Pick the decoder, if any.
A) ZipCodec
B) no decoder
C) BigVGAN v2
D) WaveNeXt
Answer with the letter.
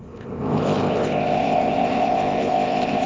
A